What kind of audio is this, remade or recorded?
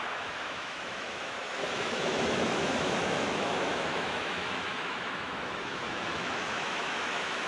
remade